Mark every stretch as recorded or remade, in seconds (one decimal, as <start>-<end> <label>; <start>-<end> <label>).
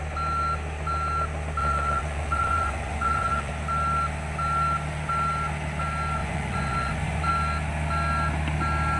0.0-1.6 recorded; 1.6-3.5 remade; 3.5-6.2 recorded; 6.2-7.3 remade; 7.3-9.0 recorded